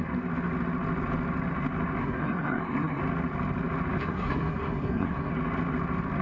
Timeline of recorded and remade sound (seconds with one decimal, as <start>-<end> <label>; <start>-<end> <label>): 0.0-2.0 recorded; 2.0-3.0 remade; 3.0-4.0 recorded; 4.0-5.3 remade; 5.3-6.2 recorded